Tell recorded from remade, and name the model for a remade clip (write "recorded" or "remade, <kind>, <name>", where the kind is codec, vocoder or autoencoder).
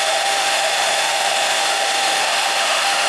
remade, autoencoder, DAC-VAE